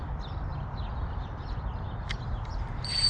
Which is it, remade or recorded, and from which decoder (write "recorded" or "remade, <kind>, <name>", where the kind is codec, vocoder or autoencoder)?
recorded